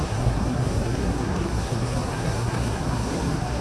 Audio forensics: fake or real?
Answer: fake